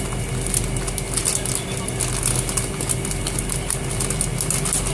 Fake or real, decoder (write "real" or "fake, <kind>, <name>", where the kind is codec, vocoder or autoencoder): real